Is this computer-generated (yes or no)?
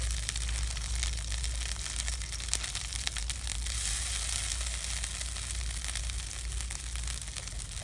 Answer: no